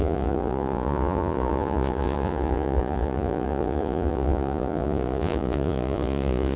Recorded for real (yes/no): no